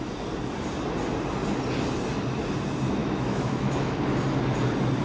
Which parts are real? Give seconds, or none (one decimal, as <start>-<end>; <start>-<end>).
0.0-3.0; 4.0-5.0